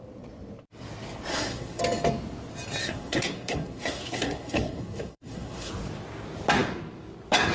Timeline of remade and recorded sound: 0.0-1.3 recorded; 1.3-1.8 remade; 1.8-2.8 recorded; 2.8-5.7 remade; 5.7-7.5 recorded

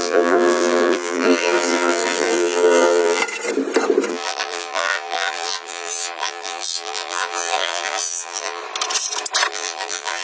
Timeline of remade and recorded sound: 0.0-3.2 remade; 3.2-4.1 recorded; 4.1-8.6 remade; 8.6-9.5 recorded; 9.5-10.2 remade

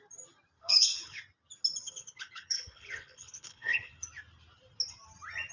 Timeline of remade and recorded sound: 0.0-0.6 recorded; 0.6-1.2 remade; 1.2-1.8 recorded; 1.8-3.9 remade; 3.9-5.5 recorded

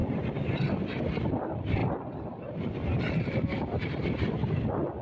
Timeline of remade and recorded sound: 0.0-1.8 remade; 1.8-3.0 recorded; 3.0-4.4 remade; 4.4-5.0 recorded

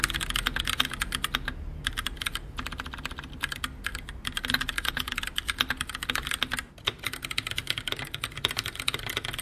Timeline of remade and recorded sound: 0.0-9.4 recorded

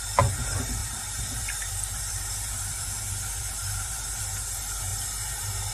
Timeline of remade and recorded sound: 0.0-0.8 recorded; 0.8-4.2 remade; 4.2-5.7 recorded